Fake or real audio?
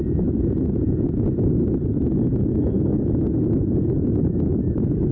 real